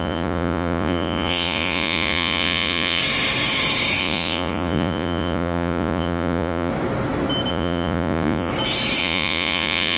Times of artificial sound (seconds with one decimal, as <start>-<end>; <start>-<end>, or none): 0.0-3.0; 4.0-6.7; 7.5-8.5; 9.0-10.0